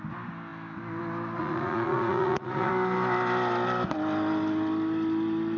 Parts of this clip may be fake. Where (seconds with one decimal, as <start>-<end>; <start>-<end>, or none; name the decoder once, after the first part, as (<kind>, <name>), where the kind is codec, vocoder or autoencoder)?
1.4-2.7 (vocoder, Vocos)